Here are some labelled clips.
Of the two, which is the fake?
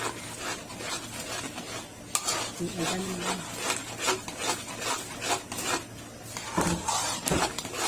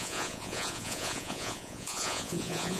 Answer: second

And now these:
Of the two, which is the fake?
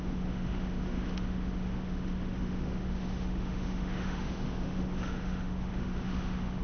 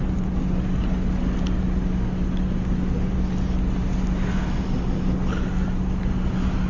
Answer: first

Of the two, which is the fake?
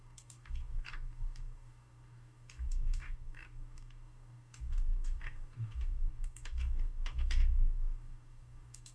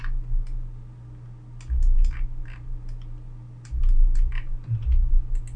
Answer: first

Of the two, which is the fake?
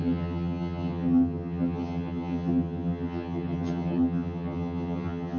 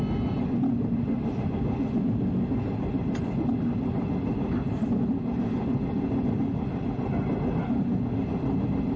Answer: first